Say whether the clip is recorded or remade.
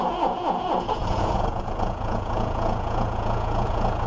remade